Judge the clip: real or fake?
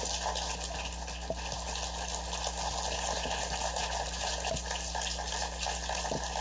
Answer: real